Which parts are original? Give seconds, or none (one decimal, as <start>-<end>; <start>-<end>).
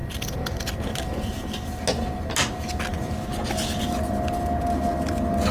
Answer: 0.0-5.5